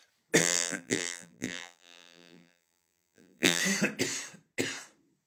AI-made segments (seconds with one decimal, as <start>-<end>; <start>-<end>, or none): 0.4-3.6